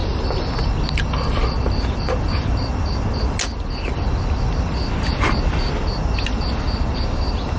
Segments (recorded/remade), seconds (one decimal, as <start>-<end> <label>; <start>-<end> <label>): 0.0-7.6 recorded